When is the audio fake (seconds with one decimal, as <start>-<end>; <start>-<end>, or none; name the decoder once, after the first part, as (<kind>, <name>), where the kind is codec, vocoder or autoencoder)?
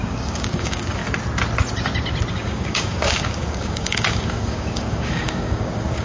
0.0-1.0 (codec, DAC); 2.3-6.0